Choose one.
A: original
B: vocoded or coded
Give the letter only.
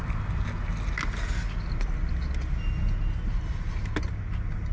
A